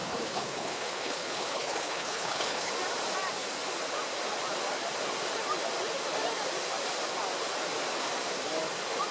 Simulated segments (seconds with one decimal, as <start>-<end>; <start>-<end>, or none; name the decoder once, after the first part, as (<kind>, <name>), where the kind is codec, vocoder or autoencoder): 0.0-2.7 (codec, HILCodec)